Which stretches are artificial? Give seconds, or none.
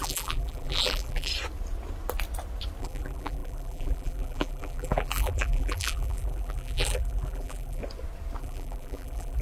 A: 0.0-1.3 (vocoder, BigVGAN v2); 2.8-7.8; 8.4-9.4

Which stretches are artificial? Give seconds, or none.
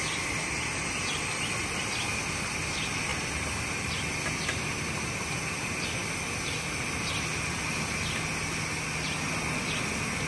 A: none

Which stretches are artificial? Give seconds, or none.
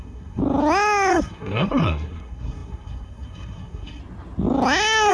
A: 0.0-0.4 (codec, SNAC); 1.1-4.0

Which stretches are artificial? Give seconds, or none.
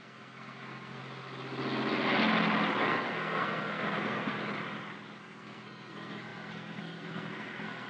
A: 0.0-1.0 (codec, SNAC); 2.8-4.4; 5.2-7.9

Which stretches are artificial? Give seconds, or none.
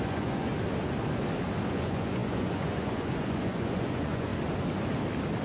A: 0.0-0.5 (vocoder, Vocos); 1.7-4.3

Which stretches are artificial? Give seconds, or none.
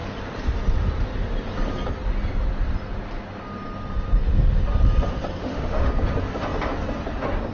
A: 5.4-5.9 (autoencoder, DAC-VAE)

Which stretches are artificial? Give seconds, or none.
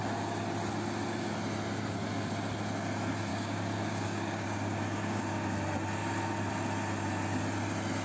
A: 3.3-5.2 (codec, DAC)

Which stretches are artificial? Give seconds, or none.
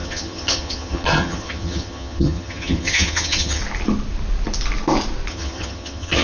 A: 0.0-3.6 (vocoder, HiFi-GAN); 5.3-6.2